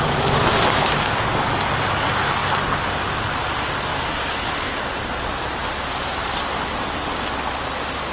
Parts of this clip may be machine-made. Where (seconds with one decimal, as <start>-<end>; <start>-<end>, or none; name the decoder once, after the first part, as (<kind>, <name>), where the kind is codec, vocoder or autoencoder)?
3.9-7.1 (vocoder, BigVGAN v2)